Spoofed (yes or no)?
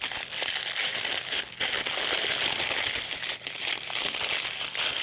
no